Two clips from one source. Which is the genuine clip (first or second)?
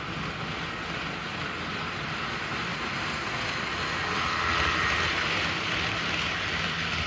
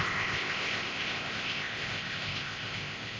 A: first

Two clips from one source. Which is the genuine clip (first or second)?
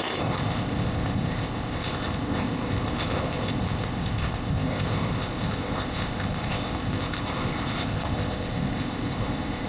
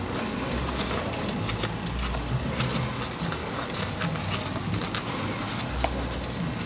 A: second